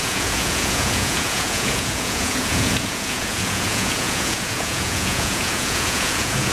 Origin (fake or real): fake